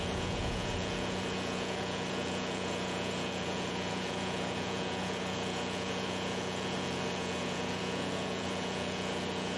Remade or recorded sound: remade